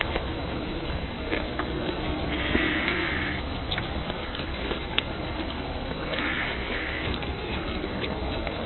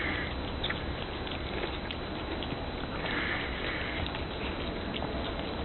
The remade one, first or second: first